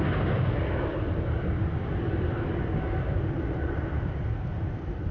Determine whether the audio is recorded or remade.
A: recorded